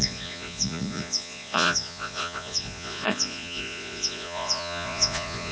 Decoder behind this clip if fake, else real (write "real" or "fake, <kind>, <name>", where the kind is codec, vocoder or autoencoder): fake, vocoder, Vocos